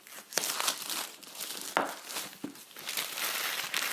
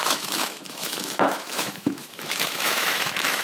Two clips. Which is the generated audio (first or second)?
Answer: second